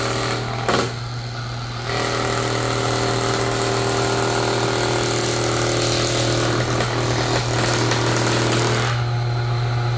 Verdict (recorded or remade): recorded